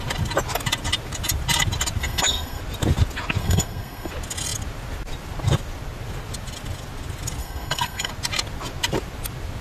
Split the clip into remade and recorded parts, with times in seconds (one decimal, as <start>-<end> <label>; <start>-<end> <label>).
0.0-2.0 recorded; 2.0-2.6 remade; 2.6-3.4 recorded; 3.4-4.1 remade; 4.1-7.4 recorded; 7.4-8.1 remade; 8.1-9.6 recorded

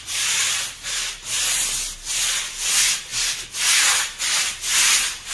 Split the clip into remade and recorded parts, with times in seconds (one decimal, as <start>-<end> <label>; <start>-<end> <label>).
0.0-5.3 recorded

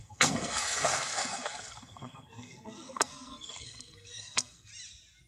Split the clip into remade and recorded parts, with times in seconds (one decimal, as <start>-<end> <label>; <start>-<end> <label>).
0.0-4.7 remade; 4.7-5.3 recorded

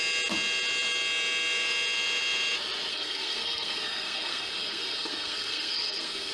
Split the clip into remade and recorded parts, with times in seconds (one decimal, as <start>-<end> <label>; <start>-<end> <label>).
0.0-2.9 recorded; 2.9-6.3 remade

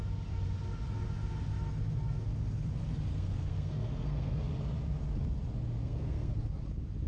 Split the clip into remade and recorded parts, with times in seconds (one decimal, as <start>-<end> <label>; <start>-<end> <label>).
0.0-3.1 recorded; 3.1-4.4 remade; 4.4-5.8 recorded; 5.8-6.3 remade; 6.3-7.1 recorded